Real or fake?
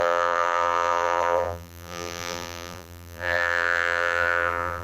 fake